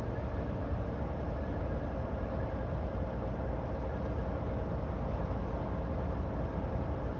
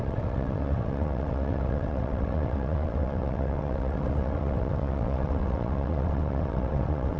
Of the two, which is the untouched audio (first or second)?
first